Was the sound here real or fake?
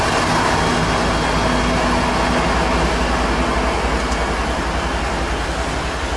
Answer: real